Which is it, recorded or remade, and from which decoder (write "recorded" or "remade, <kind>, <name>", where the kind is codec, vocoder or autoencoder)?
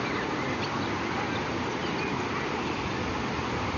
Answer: recorded